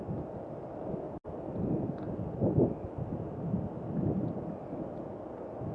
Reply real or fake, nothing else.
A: real